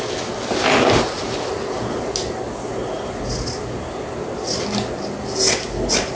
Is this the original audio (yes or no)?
yes